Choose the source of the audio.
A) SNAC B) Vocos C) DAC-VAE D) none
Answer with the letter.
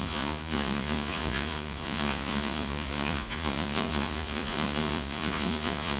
B